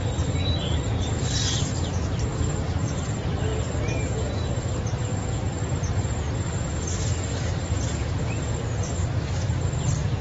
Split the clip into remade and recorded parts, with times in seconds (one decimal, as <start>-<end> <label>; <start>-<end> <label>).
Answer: 0.0-2.3 recorded; 2.3-2.9 remade; 2.9-10.2 recorded